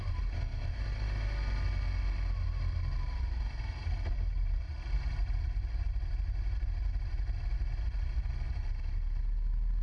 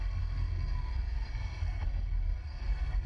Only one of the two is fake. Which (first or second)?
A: second